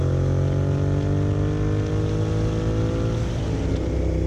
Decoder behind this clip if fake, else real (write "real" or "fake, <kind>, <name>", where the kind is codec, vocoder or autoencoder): real